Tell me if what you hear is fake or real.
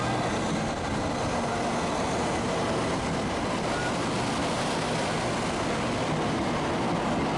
real